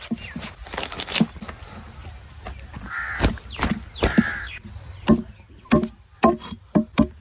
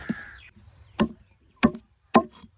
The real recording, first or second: first